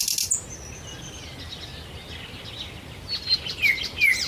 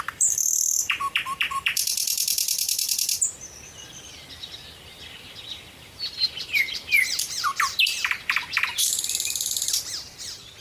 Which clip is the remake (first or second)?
second